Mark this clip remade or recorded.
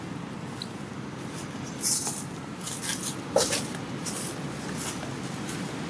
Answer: recorded